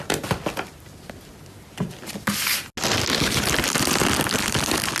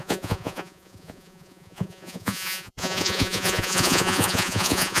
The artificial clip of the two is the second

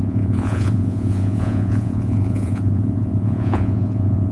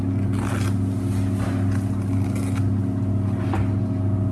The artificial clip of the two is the first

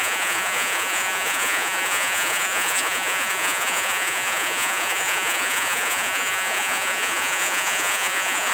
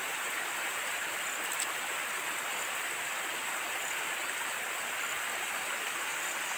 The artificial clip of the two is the first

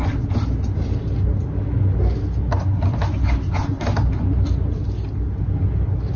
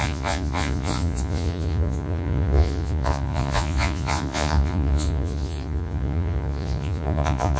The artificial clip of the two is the second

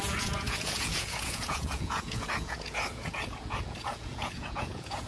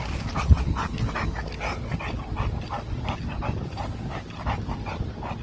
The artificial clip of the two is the first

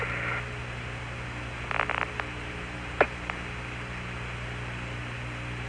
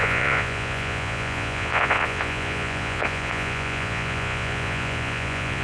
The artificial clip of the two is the second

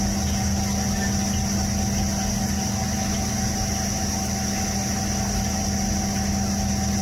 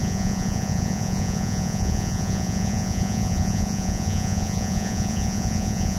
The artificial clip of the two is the second